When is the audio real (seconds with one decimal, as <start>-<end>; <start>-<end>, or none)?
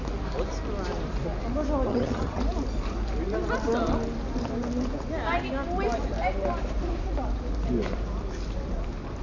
0.0-1.9; 2.4-9.2